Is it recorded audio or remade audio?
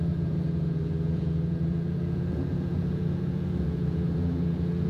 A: remade